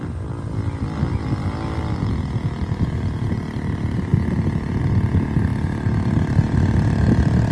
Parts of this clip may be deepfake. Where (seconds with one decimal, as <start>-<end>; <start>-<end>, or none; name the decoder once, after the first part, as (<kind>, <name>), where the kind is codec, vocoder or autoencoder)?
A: none